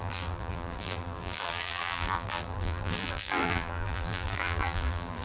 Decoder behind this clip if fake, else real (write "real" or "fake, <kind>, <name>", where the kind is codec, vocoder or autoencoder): fake, vocoder, BigVGAN v2